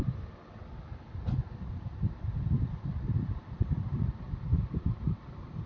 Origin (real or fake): real